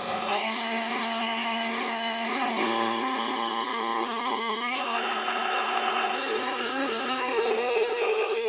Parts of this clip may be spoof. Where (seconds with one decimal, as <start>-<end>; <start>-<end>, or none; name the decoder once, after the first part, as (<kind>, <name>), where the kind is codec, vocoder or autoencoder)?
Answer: 0.0-8.5 (codec, SNAC)